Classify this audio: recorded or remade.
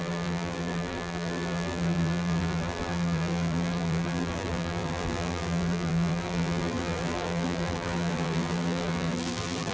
remade